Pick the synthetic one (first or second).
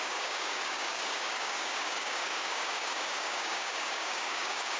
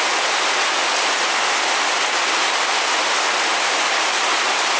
first